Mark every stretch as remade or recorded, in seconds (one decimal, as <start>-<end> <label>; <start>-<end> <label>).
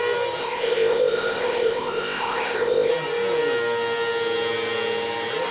0.0-0.4 recorded; 0.4-2.9 remade; 2.9-5.5 recorded